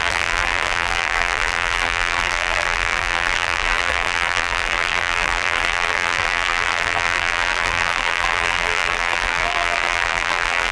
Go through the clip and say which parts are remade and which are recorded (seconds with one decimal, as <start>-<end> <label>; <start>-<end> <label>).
0.0-10.7 remade

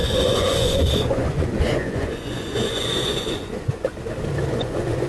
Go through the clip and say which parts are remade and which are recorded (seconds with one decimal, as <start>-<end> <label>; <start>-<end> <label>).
0.0-3.9 remade; 3.9-4.5 recorded; 4.5-5.1 remade

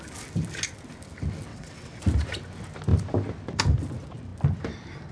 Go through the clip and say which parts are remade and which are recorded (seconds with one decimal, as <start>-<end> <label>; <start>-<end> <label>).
0.0-1.5 recorded; 1.5-2.0 remade; 2.0-5.1 recorded